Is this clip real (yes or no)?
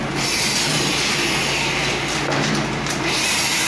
yes